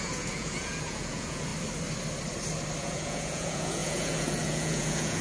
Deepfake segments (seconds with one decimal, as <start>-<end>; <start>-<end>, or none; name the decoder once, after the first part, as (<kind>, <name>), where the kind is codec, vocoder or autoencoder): 0.0-1.5 (vocoder, Vocos); 2.8-5.2